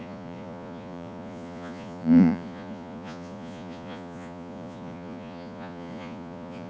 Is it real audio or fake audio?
fake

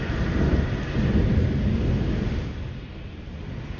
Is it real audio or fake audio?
real